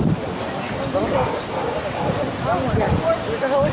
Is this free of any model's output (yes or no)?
yes